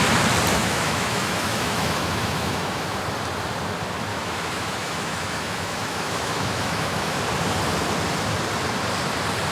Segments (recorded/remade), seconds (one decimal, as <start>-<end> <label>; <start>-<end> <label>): 0.0-0.5 recorded; 0.5-3.0 remade; 3.0-4.1 recorded; 4.1-7.2 remade; 7.2-9.5 recorded

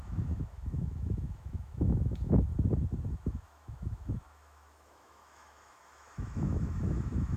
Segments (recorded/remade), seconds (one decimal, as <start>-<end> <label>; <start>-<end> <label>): 0.0-2.5 remade; 2.5-3.2 recorded; 3.2-7.4 remade

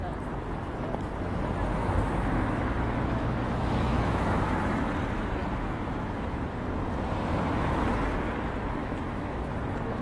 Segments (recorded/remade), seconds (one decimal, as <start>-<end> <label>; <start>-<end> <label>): 0.0-1.8 recorded; 1.8-4.9 remade; 4.9-5.4 recorded; 5.4-6.4 remade; 6.4-8.8 recorded; 8.8-9.5 remade; 9.5-10.0 recorded

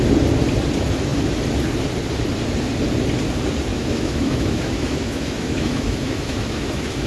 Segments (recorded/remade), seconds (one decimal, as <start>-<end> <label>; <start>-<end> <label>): 0.0-3.7 recorded; 3.7-7.1 remade

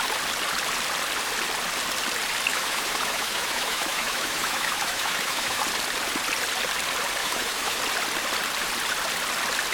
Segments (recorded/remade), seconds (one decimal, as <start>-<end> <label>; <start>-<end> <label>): 0.0-2.5 recorded; 2.5-5.6 remade; 5.6-7.2 recorded; 7.2-7.8 remade; 7.8-9.7 recorded